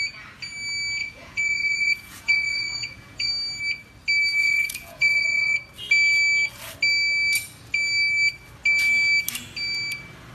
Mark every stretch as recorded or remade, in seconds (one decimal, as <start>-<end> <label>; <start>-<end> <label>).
0.0-1.0 recorded; 1.0-3.3 remade; 3.3-4.4 recorded; 4.4-5.6 remade; 5.6-10.3 recorded

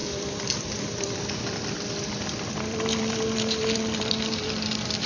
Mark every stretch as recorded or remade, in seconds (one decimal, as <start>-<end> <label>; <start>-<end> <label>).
0.0-5.1 remade

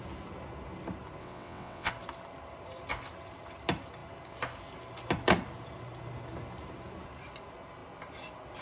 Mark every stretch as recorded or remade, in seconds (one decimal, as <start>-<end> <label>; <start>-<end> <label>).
0.0-1.2 recorded; 1.2-1.9 remade; 1.9-8.6 recorded

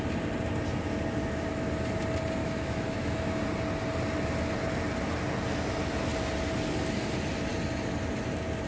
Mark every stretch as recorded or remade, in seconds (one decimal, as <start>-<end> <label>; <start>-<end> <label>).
0.0-1.2 recorded; 1.2-1.7 remade; 1.7-2.4 recorded; 2.4-3.4 remade; 3.4-8.7 recorded

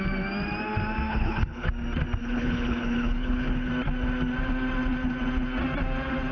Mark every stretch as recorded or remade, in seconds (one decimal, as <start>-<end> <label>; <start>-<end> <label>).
0.0-1.1 recorded; 1.1-1.7 remade; 1.7-2.2 recorded; 2.2-3.7 remade; 3.7-6.3 recorded

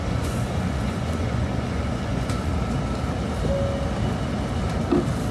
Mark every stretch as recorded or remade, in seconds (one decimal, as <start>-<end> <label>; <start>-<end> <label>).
0.0-2.5 remade; 2.5-5.3 recorded

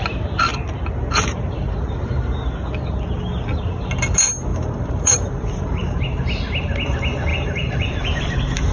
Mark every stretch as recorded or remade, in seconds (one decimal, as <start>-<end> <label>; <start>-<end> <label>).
0.0-4.5 recorded; 4.5-6.0 remade; 6.0-7.3 recorded; 7.3-8.2 remade; 8.2-8.7 recorded

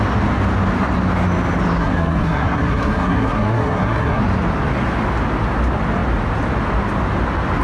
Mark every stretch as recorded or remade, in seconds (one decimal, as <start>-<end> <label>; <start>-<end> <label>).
0.0-1.8 recorded; 1.8-4.2 remade; 4.2-7.6 recorded